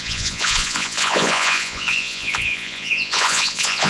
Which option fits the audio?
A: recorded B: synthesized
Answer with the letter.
B